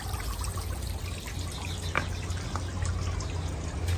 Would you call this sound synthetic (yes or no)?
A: no